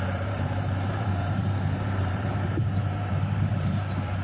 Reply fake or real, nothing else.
fake